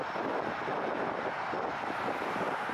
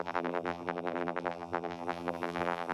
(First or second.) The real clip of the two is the first